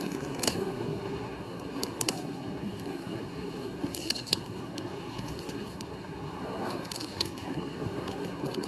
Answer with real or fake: fake